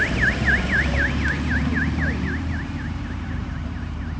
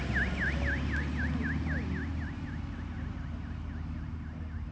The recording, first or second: second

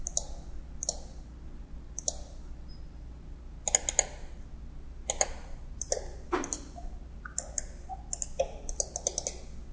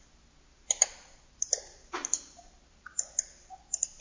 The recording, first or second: first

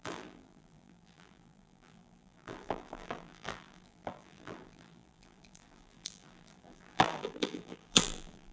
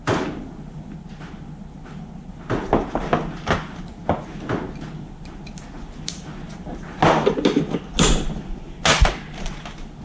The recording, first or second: second